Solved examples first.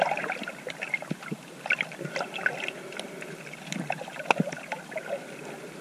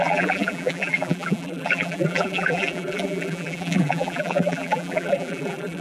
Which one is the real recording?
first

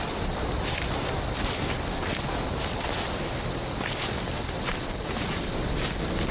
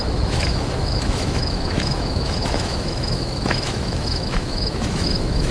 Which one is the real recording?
first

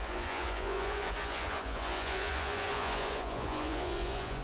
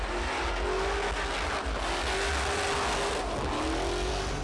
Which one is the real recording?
second